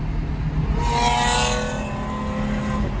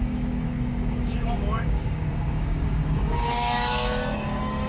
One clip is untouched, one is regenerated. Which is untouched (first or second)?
first